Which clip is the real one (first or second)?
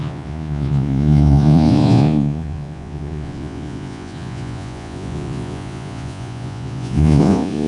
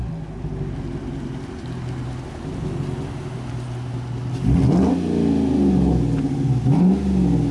second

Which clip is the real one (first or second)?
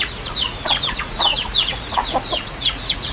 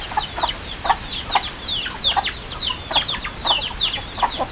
second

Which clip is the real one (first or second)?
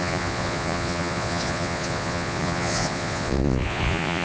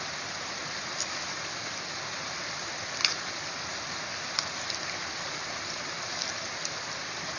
second